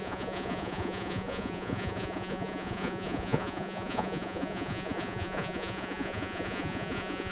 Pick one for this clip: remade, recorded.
remade